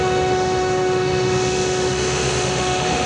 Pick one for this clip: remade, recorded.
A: remade